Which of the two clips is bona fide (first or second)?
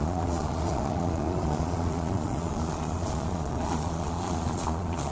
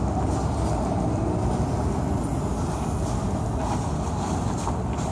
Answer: second